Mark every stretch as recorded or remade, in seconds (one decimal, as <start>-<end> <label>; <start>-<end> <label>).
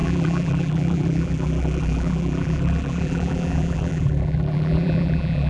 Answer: 0.0-5.5 remade